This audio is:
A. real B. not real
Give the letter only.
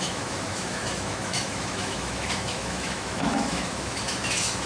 B